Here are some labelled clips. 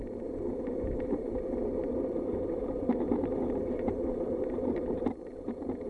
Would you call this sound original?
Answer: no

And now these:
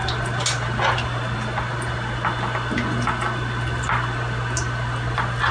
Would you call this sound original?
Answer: yes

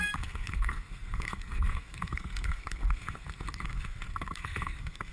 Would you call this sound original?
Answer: no